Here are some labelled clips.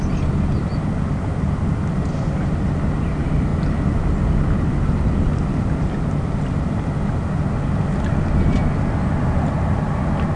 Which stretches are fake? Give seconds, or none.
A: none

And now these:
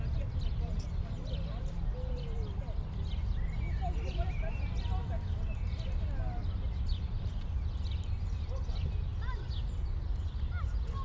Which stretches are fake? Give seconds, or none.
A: none

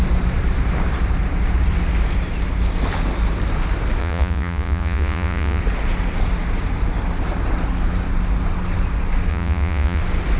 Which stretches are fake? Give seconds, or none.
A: 4.0-5.6 (vocoder, Vocos); 9.3-10.0

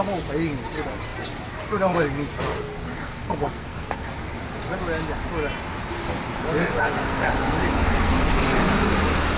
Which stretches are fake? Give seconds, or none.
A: 2.5-4.2 (codec, SNAC); 6.6-8.3